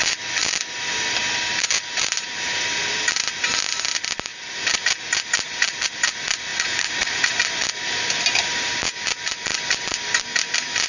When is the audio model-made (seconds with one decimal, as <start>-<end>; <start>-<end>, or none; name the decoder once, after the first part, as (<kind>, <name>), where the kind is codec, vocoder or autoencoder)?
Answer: 6.5-7.4 (vocoder, Vocos)